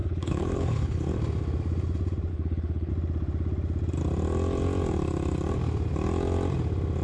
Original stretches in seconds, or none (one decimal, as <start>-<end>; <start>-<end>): 1.1-2.3; 2.9-7.0